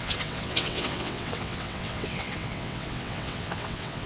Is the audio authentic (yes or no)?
no